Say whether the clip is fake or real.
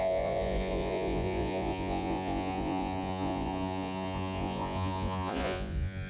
fake